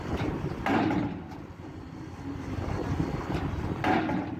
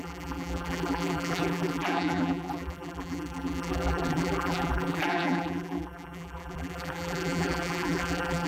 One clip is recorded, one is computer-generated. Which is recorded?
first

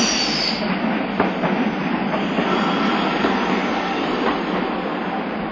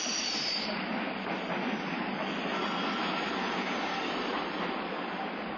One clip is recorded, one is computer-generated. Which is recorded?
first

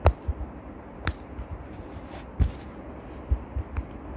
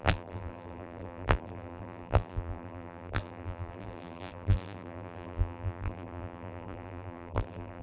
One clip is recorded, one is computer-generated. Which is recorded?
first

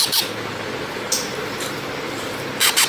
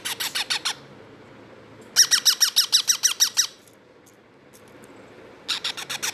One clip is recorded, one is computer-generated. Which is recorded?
second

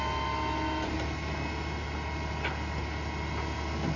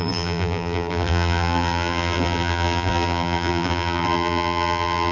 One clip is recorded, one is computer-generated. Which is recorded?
first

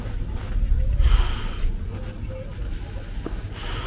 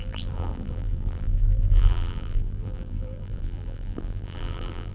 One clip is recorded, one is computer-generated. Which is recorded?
first